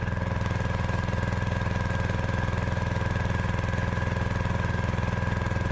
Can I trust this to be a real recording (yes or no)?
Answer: yes